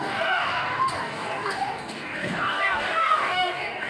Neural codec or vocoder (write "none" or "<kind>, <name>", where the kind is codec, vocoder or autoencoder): codec, DAC